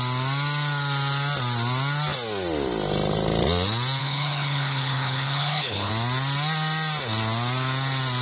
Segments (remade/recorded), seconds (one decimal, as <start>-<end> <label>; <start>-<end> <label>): 0.0-4.0 recorded; 4.0-5.9 remade; 5.9-8.2 recorded